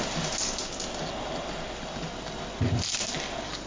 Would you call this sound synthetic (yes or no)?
no